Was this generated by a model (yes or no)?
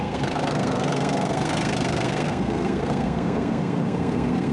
yes